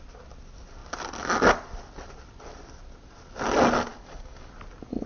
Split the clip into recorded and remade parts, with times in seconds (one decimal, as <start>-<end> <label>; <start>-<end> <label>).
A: 0.0-3.9 recorded; 3.9-4.5 remade; 4.5-5.1 recorded